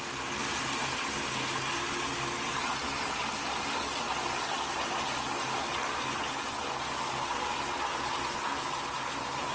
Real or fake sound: real